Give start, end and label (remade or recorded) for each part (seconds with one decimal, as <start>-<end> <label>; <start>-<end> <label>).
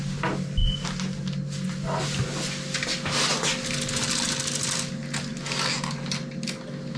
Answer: 0.0-7.0 recorded